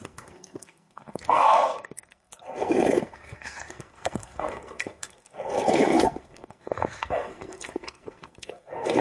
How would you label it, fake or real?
fake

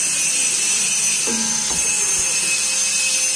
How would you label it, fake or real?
real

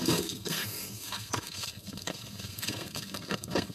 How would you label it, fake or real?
fake